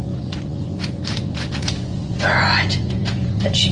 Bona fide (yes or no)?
no